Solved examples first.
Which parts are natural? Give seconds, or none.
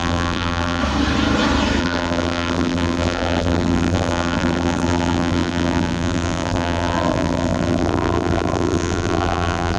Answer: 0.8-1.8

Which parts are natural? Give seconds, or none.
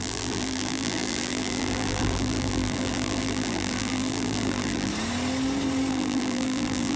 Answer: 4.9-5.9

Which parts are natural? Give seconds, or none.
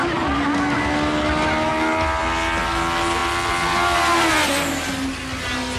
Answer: 0.0-5.8